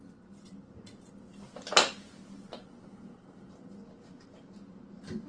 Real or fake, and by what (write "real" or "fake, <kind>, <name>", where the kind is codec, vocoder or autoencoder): real